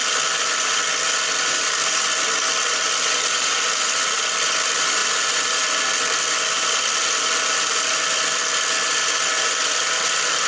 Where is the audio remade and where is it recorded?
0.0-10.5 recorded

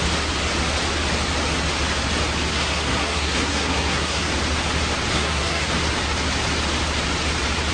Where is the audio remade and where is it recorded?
0.0-2.5 recorded; 2.5-4.3 remade; 4.3-5.1 recorded; 5.1-5.7 remade; 5.7-7.7 recorded